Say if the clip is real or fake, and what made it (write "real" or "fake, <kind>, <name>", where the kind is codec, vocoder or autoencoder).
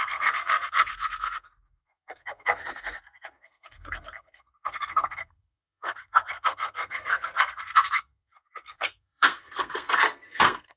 fake, codec, SNAC